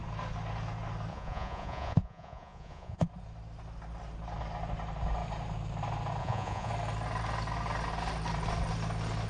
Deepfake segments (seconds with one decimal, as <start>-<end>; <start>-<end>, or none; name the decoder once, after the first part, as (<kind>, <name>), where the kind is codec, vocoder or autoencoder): 1.1-3.1 (vocoder, Vocos); 6.2-6.7